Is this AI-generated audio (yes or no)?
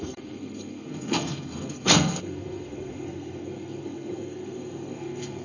yes